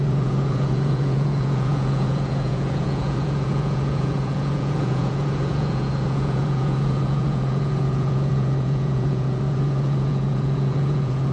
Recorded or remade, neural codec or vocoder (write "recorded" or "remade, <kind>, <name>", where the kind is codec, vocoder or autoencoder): remade, vocoder, Vocos